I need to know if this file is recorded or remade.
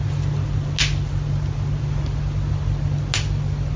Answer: recorded